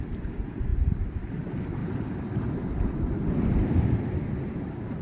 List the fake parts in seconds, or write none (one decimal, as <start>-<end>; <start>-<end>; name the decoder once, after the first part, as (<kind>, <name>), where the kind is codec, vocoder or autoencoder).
0.7-1.3 (vocoder, BigVGAN v2); 1.8-4.1

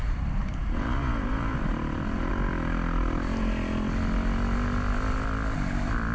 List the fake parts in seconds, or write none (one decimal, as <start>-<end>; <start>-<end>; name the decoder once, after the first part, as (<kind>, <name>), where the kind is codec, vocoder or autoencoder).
0.0-2.3 (vocoder, BigVGAN v2)

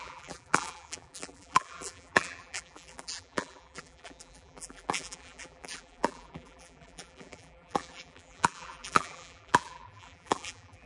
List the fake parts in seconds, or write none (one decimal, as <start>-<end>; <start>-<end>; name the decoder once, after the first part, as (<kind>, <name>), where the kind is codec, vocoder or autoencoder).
0.0-10.9 (vocoder, BigVGAN v2)

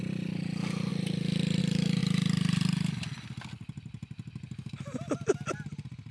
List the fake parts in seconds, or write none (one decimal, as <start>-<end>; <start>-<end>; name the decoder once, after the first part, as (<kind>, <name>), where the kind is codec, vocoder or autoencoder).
none

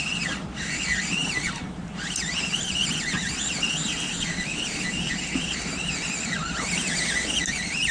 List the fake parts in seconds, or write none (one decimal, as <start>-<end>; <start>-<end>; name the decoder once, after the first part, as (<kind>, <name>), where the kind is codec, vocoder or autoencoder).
1.2-5.2 (vocoder, BigVGAN v2)

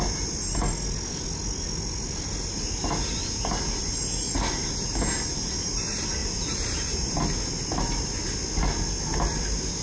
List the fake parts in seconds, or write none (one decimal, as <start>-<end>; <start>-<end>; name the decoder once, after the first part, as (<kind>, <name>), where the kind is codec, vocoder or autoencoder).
4.9-5.5 (vocoder, BigVGAN v2); 6.2-7.2